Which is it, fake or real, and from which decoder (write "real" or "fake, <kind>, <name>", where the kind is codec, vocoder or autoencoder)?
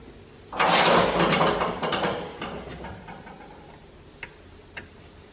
real